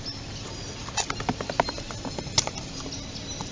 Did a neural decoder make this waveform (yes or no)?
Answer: no